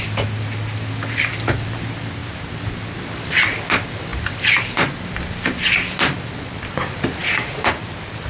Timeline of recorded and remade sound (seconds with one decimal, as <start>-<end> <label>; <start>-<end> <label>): 0.0-7.2 recorded; 7.2-7.9 remade; 7.9-8.3 recorded